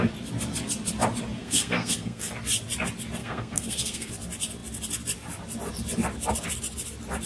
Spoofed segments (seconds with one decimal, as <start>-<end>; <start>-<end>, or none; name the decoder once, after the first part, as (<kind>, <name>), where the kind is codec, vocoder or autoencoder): 1.4-2.3 (codec, SNAC); 3.2-4.1